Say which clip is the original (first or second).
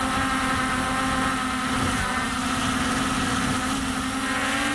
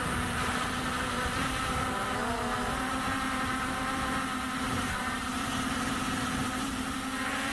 first